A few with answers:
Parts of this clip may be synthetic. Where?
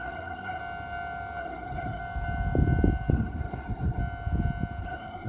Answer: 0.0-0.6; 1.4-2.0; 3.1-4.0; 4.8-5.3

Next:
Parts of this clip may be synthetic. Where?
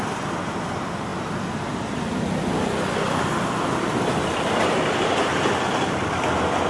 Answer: none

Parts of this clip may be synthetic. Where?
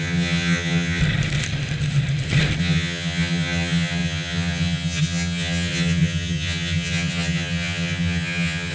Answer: 0.0-1.0; 2.6-8.7